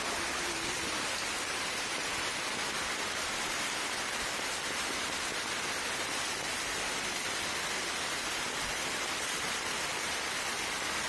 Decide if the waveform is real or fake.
real